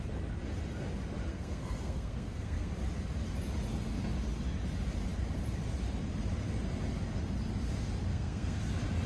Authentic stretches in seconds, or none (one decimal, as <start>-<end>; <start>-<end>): 0.0-1.3; 2.7-8.1; 8.6-9.1